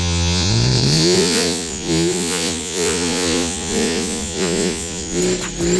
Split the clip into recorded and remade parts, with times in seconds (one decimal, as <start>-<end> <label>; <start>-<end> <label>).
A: 0.0-5.2 remade; 5.2-5.8 recorded